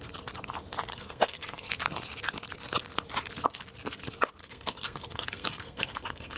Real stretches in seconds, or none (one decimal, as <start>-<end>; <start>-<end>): 0.0-0.9; 1.7-4.4